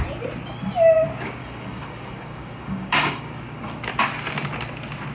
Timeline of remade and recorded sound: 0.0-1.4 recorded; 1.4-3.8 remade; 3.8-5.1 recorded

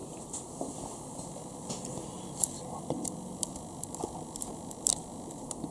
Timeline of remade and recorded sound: 0.0-5.7 recorded